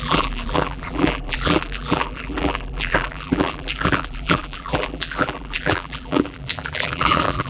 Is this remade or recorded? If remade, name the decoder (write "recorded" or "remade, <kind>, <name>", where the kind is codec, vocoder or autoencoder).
remade, vocoder, BigVGAN v2